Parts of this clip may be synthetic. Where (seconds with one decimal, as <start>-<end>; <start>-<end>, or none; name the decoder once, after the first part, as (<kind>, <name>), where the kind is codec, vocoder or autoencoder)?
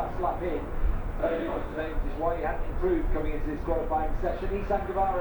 1.2-1.8 (autoencoder, DAC-VAE)